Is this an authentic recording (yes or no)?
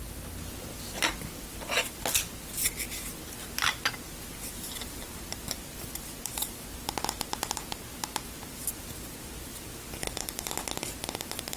yes